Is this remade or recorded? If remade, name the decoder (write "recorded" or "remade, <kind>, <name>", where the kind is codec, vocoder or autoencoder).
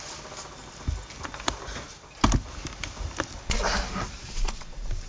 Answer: recorded